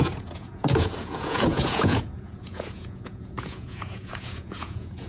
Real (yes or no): no